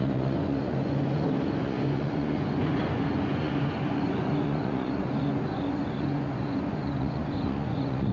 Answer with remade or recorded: remade